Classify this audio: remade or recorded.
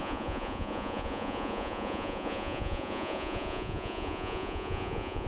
remade